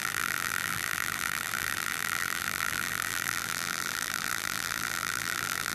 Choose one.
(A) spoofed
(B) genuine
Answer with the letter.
A